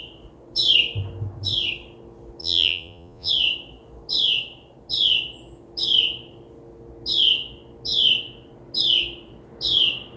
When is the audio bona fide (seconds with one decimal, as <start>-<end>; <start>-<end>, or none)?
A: 0.0-2.4; 3.3-10.2